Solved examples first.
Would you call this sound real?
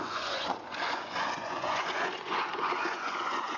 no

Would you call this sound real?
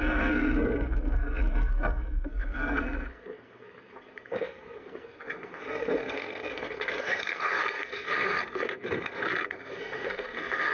no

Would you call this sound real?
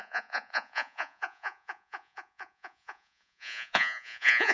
no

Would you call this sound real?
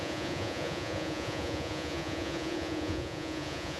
no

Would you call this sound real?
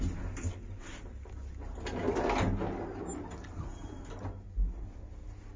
yes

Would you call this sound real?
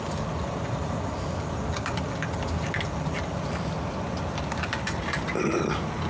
yes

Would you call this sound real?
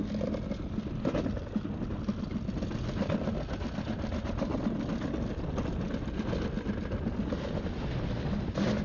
yes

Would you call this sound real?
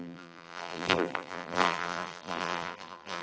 no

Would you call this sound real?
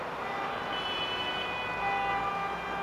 yes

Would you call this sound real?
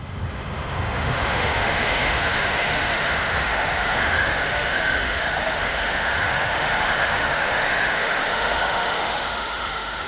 no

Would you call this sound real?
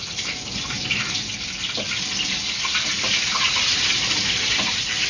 yes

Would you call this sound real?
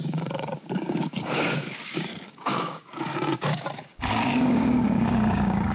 no